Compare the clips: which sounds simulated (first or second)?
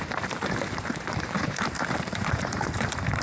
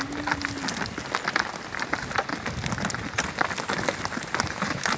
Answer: first